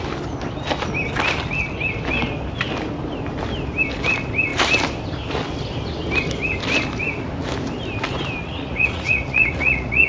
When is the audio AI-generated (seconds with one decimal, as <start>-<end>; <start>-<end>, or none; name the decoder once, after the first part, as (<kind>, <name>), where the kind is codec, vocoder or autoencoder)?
8.4-10.1 (vocoder, Vocos)